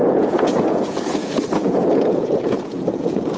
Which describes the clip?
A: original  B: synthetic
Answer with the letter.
B